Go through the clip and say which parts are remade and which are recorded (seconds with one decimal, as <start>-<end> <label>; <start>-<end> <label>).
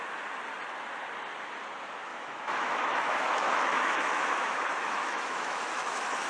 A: 0.0-2.1 recorded; 2.1-6.3 remade